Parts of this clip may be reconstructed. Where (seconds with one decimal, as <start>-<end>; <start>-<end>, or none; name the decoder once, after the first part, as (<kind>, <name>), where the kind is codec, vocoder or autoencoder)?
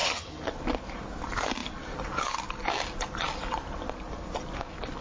0.0-0.5 (vocoder, HiFi-GAN)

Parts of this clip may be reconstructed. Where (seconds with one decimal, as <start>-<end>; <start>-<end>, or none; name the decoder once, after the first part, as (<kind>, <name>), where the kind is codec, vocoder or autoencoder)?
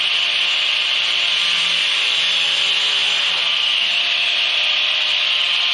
none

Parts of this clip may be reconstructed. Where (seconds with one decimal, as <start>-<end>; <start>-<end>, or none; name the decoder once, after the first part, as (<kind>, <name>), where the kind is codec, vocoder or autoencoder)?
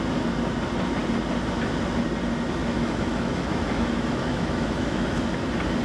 2.6-5.2 (autoencoder, DAC-VAE)